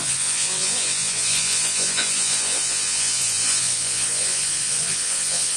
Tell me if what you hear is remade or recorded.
remade